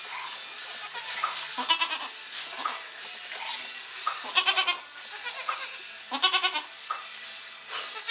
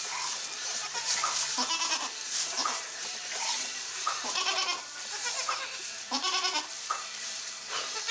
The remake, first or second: second